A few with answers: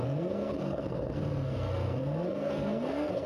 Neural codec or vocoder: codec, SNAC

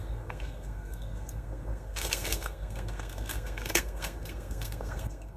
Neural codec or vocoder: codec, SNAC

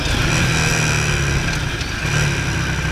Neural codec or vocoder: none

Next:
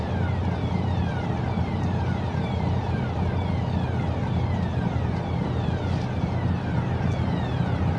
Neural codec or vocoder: none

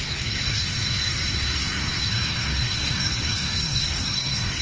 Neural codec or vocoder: codec, SNAC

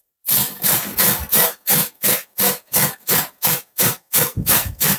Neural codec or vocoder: codec, SNAC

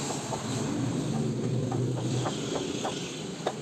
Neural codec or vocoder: none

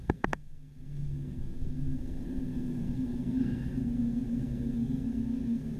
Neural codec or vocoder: codec, SNAC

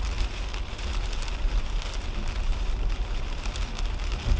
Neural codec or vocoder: none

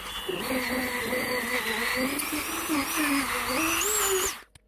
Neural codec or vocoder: none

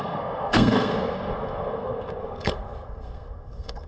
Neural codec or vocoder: codec, SNAC